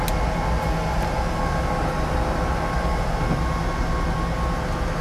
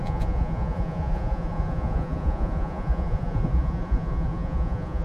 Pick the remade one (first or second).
second